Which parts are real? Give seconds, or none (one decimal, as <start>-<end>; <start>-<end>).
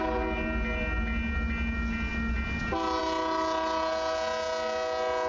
0.0-5.3